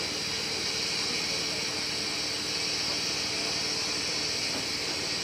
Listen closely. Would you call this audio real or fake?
real